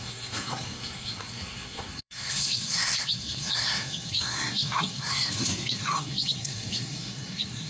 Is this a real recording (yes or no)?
no